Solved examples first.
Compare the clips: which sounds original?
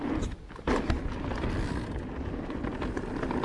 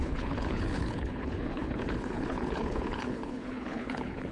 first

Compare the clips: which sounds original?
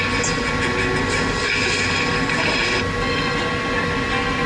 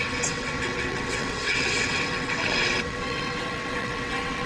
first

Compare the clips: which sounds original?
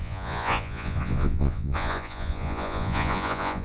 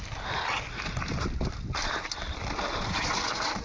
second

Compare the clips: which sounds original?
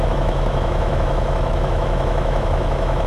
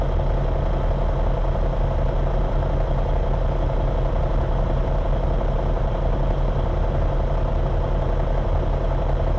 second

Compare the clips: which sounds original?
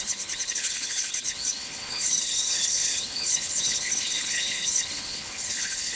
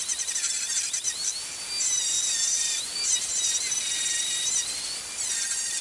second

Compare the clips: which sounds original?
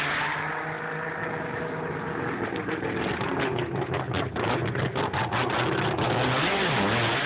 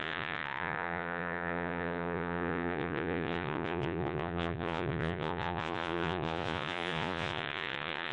first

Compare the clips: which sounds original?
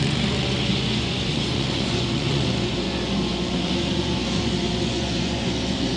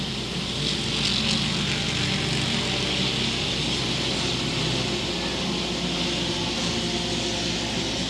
second